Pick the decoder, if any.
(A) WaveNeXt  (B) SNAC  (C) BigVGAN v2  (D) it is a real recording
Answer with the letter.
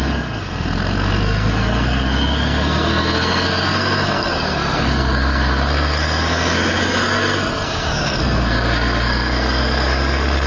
B